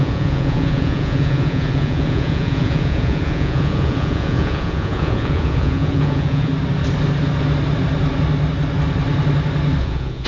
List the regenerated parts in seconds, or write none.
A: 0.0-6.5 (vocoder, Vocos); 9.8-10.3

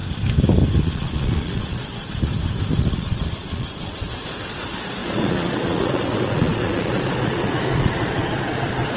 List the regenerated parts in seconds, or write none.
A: 0.8-2.3 (vocoder, Vocos); 2.8-9.0

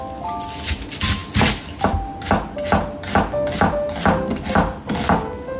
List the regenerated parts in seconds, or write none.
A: none

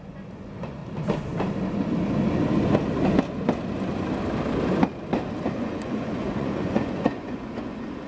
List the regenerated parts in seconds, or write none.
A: 0.0-0.8 (vocoder, Vocos); 5.5-8.1

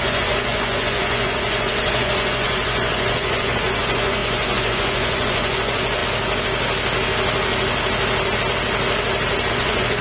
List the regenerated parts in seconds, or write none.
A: 0.0-6.0 (vocoder, Vocos); 9.5-10.0

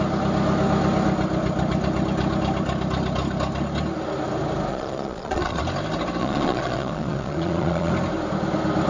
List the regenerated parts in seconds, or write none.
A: 4.7-5.6 (vocoder, Vocos); 6.2-7.9

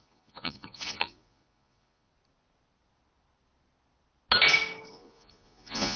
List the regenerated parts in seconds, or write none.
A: 0.0-2.1 (vocoder, Vocos); 4.9-6.0